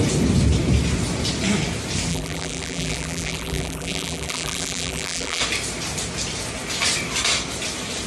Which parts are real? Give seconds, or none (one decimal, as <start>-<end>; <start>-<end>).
0.0-2.1; 5.4-8.1